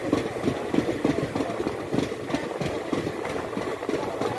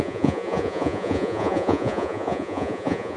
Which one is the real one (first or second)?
first